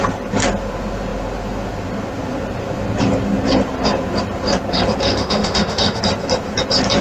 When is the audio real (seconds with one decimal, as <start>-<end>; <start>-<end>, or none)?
0.0-5.0; 6.0-7.0